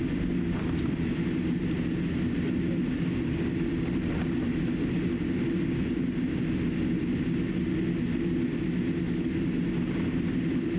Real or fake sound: real